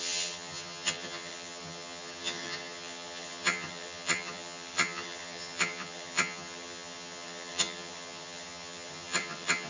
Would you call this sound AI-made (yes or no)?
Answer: yes